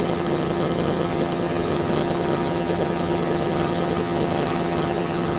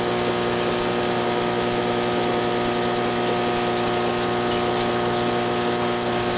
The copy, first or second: first